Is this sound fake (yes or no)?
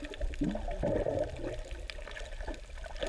no